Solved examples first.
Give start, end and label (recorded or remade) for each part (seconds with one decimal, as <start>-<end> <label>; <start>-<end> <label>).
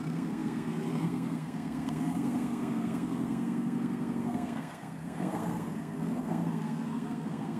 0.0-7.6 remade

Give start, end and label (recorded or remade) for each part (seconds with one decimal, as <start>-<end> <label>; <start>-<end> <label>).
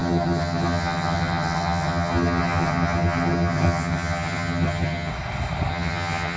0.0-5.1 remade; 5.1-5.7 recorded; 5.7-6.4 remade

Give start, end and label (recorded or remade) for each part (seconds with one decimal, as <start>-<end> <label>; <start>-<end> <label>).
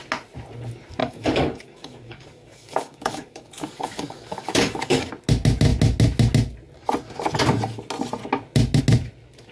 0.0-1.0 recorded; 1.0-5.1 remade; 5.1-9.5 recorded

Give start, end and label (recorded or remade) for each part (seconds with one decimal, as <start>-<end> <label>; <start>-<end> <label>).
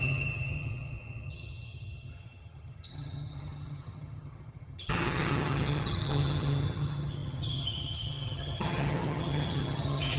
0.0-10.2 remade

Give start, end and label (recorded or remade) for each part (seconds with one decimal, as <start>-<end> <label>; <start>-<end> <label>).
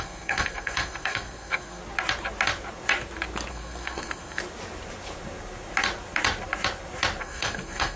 0.0-1.8 remade; 1.8-3.5 recorded; 3.5-4.4 remade; 4.4-7.2 recorded; 7.2-8.0 remade